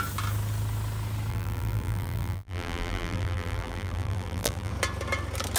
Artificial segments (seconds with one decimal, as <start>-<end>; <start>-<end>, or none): 1.3-4.7